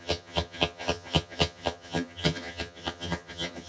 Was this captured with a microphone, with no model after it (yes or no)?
no